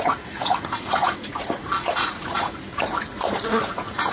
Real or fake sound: fake